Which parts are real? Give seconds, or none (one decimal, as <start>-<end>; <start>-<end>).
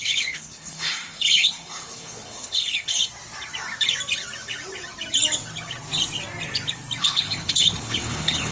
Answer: 3.0-7.0